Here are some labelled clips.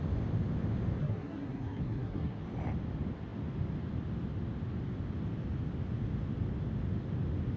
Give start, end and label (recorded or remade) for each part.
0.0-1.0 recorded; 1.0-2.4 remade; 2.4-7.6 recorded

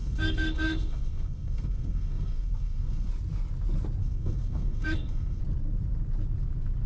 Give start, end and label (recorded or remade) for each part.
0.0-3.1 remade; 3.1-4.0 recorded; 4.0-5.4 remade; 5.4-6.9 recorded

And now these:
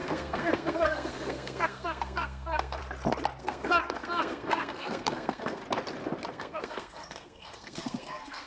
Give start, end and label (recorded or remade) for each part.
0.0-2.8 remade; 2.8-3.4 recorded; 3.4-5.6 remade; 5.6-6.3 recorded; 6.3-8.5 remade